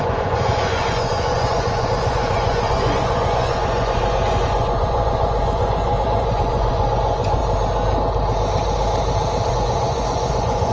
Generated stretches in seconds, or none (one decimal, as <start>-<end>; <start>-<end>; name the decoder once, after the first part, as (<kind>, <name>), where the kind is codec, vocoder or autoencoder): 0.0-7.4 (vocoder, Vocos); 9.5-10.7